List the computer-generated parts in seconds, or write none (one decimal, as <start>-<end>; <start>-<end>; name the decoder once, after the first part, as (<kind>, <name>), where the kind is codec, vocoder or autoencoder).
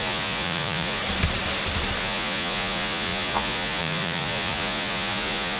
0.0-1.0 (vocoder, Vocos); 2.0-5.6